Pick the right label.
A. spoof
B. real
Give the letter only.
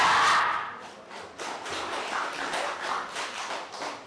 B